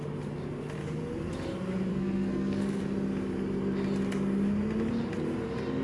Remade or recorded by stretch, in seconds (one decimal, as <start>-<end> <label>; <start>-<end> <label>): 0.0-1.9 recorded; 1.9-2.8 remade; 2.8-5.8 recorded